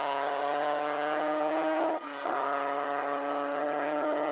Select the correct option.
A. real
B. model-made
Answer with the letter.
B